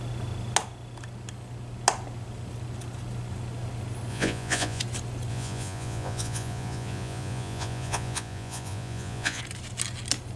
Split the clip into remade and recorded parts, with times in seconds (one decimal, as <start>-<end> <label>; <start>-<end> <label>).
0.0-4.1 recorded; 4.1-4.8 remade; 4.8-5.3 recorded; 5.3-9.4 remade; 9.4-10.4 recorded